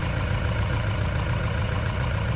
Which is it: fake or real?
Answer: fake